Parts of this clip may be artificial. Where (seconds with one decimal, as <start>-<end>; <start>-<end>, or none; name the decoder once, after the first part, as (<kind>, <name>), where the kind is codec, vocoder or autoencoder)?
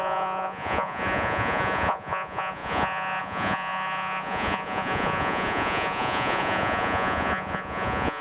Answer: 0.0-8.2 (vocoder, Vocos)